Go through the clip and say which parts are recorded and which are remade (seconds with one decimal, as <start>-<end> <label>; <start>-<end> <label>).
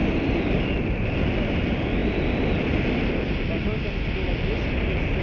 0.0-0.6 remade; 0.6-5.2 recorded